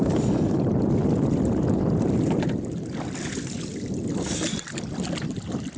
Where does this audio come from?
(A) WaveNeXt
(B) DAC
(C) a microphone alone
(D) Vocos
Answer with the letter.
C